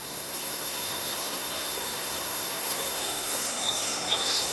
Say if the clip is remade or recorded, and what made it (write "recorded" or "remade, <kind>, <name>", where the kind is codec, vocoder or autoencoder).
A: remade, codec, SNAC